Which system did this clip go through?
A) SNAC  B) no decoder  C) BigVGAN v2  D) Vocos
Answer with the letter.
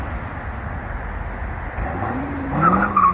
B